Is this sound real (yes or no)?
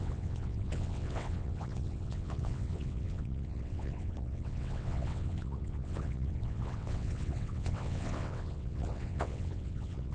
no